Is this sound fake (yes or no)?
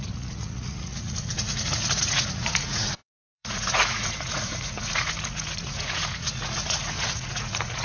yes